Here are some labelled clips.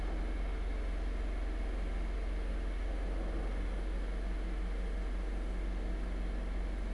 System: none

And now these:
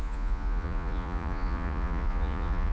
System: vocoder, Vocos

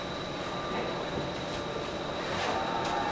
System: none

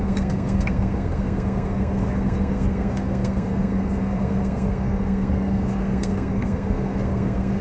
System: codec, SNAC